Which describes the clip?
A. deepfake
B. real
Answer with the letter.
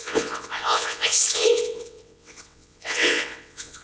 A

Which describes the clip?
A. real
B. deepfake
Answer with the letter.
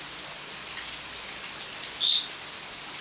A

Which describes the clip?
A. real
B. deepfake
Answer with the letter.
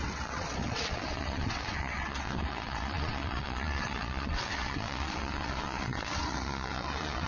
B